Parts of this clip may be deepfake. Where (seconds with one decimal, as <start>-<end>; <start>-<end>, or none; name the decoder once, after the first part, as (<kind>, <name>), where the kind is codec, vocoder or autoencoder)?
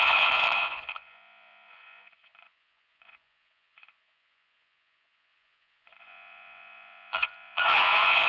0.0-8.3 (vocoder, Vocos)